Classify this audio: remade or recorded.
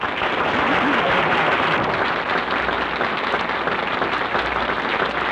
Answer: recorded